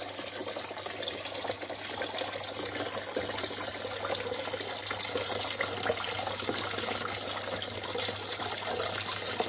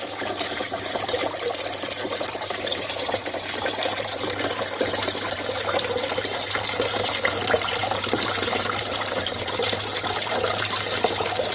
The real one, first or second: first